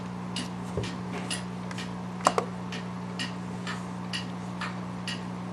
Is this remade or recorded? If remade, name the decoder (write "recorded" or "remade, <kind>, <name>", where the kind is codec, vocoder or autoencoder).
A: recorded